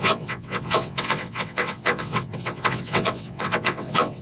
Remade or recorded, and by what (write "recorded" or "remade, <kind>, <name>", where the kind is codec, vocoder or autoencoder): remade, vocoder, WaveNeXt